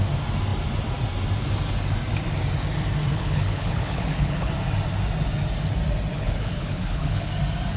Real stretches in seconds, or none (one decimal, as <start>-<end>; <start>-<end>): 0.0-3.1; 4.5-6.1; 7.3-7.8